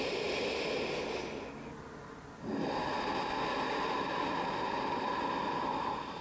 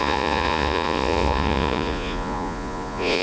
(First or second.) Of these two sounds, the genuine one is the first